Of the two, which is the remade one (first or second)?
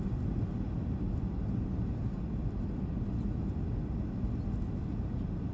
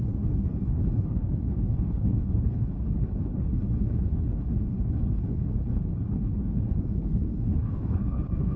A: second